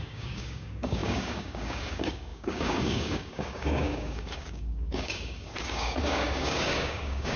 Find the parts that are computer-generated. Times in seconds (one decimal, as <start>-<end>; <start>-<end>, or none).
0.0-7.4